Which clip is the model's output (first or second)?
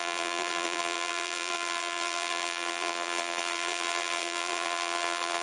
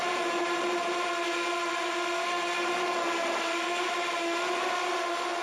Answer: first